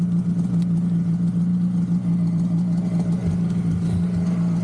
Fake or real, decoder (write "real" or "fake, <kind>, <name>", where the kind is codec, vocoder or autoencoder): real